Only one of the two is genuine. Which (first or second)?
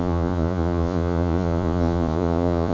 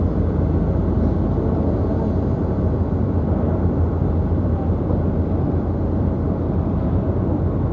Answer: second